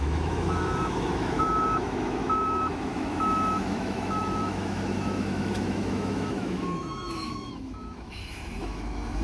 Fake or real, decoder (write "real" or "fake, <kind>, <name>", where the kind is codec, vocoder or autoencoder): fake, autoencoder, DAC-VAE